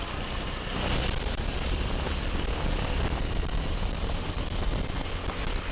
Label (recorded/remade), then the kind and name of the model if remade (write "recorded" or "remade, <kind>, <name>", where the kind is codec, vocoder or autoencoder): recorded